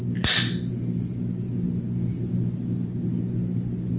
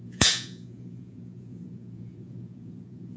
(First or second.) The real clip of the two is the first